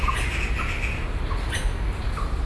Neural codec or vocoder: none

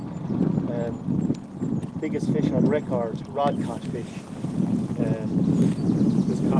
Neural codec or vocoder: none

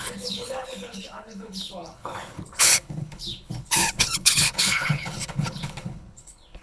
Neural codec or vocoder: codec, HILCodec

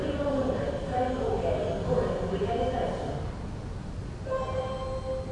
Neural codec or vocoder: none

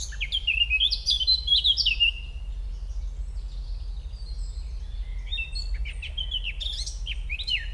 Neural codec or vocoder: none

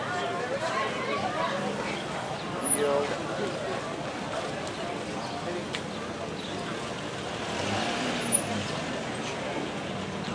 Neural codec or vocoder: none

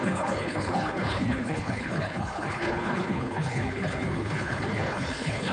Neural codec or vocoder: codec, HILCodec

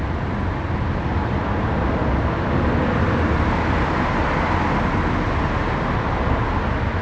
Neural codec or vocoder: none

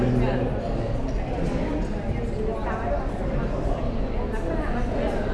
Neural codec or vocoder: none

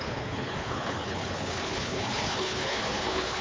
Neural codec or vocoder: codec, HILCodec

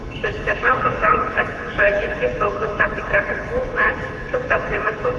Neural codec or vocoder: codec, HILCodec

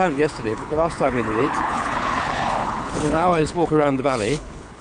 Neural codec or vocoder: codec, HILCodec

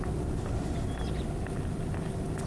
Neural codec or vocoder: none